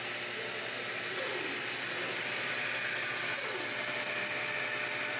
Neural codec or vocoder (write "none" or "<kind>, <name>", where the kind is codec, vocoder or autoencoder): none